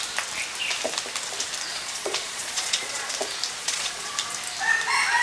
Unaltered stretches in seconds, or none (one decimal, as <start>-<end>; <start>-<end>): 0.0-1.7; 3.1-3.6; 4.1-5.2